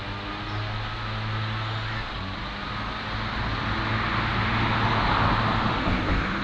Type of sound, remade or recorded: recorded